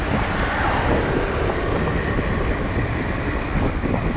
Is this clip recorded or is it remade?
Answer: recorded